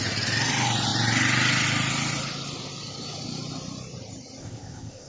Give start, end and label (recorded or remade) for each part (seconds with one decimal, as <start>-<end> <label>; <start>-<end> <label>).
0.0-4.4 recorded; 4.4-5.1 remade